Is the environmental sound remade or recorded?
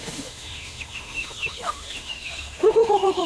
remade